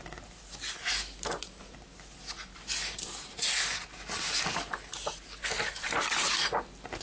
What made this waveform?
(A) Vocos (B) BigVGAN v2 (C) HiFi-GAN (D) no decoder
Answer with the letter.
D